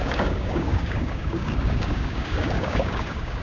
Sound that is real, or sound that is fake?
fake